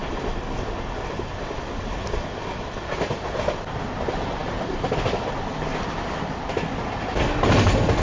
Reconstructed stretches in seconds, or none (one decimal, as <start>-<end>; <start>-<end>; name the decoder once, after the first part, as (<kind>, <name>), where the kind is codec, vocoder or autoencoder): none